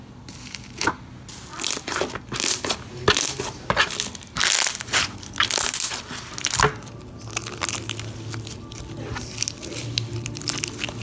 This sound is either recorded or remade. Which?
recorded